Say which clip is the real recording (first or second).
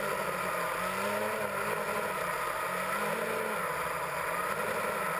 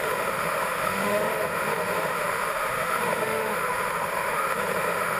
first